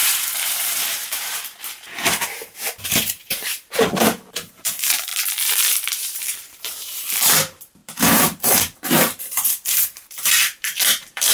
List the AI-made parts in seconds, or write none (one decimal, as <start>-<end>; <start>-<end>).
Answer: 0.0-5.1; 5.9-11.3